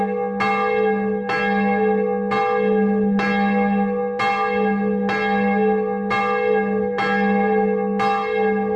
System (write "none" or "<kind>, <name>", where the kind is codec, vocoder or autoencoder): none